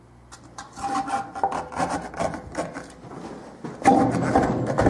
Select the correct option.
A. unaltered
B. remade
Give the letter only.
A